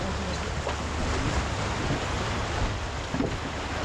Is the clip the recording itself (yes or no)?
yes